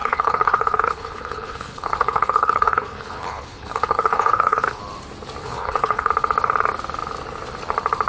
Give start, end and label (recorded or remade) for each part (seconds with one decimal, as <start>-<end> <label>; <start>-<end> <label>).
0.0-4.8 remade; 4.8-5.4 recorded; 5.4-6.1 remade; 6.1-8.1 recorded